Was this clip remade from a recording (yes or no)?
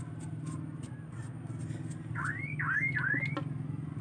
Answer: no